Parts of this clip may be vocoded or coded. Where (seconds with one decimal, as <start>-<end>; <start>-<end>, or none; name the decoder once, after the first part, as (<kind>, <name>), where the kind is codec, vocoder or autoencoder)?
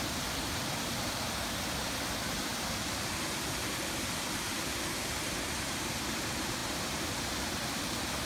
2.5-4.5 (vocoder, BigVGAN v2); 6.6-7.2